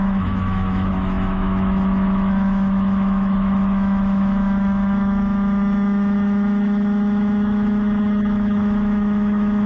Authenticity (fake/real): fake